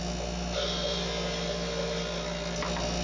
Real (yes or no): yes